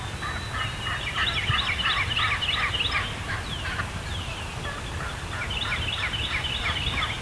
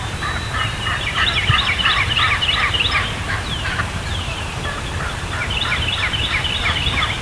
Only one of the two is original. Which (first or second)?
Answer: first